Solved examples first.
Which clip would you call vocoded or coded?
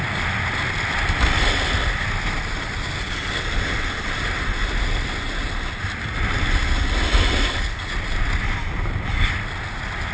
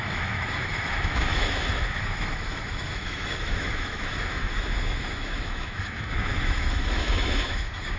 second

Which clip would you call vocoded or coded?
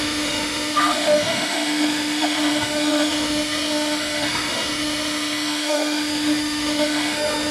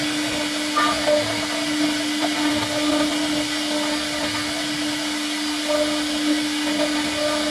first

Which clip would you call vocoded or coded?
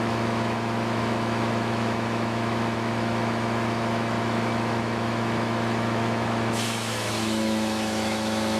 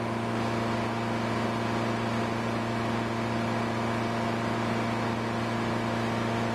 first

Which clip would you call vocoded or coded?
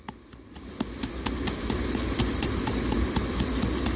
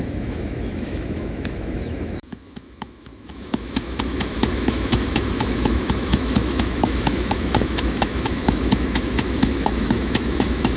second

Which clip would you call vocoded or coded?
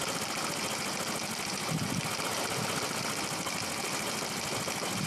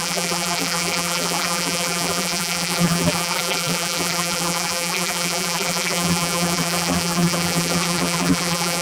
second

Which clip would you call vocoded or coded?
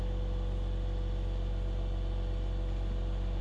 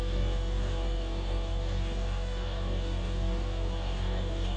second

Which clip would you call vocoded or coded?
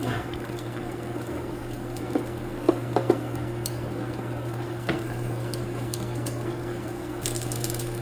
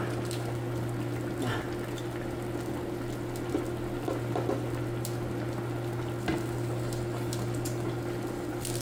first